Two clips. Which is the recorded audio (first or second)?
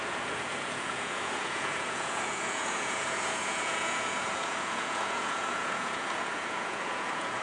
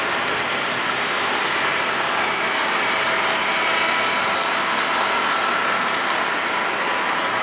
second